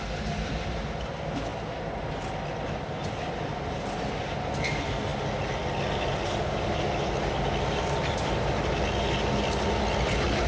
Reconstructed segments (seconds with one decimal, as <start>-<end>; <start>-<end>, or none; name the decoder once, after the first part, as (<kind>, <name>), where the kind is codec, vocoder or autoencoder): none